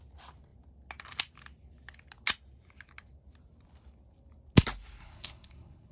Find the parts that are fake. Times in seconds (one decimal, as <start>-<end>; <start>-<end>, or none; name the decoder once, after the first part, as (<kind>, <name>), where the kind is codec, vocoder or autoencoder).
5.0-5.9 (codec, HILCodec)